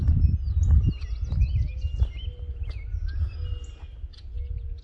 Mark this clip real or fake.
real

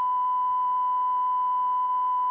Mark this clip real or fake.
real